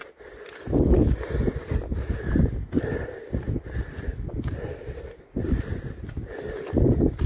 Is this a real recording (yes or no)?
yes